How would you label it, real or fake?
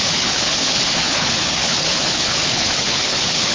fake